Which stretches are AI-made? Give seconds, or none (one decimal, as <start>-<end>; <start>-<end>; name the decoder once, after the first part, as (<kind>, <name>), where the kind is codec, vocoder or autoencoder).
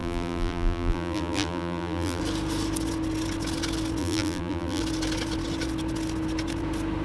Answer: 0.0-2.2 (vocoder, BigVGAN v2); 4.0-4.8